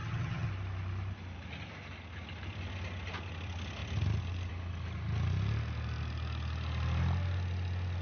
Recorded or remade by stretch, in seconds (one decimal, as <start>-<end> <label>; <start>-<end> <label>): 0.0-0.5 remade; 0.5-8.0 recorded